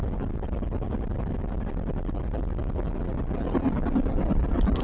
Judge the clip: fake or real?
real